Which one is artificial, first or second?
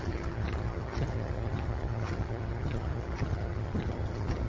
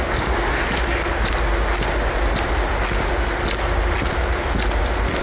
first